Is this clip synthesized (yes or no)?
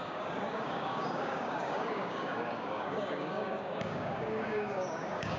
yes